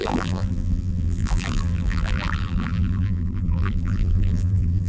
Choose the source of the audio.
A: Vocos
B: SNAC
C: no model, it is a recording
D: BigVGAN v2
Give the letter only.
D